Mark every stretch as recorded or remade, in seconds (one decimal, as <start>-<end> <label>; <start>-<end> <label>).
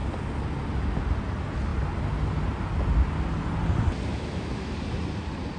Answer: 0.0-4.1 recorded; 4.1-4.7 remade; 4.7-5.6 recorded